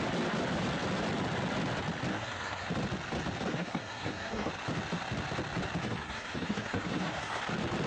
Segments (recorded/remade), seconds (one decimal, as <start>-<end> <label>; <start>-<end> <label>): 0.0-2.1 recorded; 2.1-2.7 remade; 2.7-3.5 recorded; 3.5-4.5 remade; 4.5-5.8 recorded; 5.8-7.4 remade; 7.4-7.9 recorded